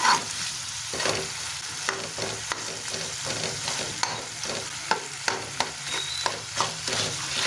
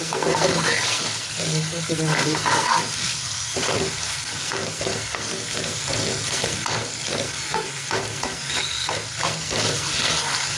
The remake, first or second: second